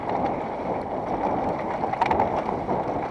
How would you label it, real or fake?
real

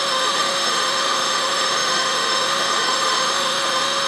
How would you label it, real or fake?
fake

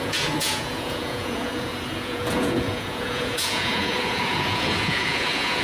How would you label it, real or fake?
fake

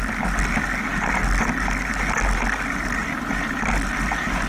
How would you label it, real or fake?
real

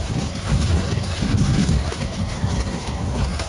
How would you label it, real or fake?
fake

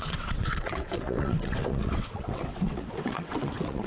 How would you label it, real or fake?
fake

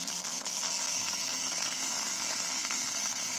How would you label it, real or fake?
fake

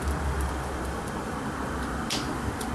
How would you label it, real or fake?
real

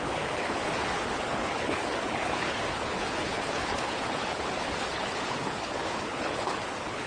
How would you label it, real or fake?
fake